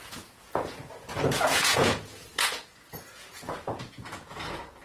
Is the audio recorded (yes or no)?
no